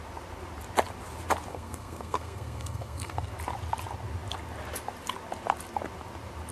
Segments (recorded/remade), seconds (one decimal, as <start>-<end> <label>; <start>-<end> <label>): 0.0-1.5 recorded; 1.5-3.3 remade; 3.3-6.5 recorded